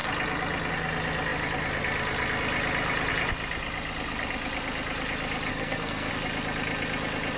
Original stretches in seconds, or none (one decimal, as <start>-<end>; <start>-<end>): 0.0-5.5; 6.1-7.4